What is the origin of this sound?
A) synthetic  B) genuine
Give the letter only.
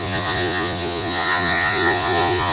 A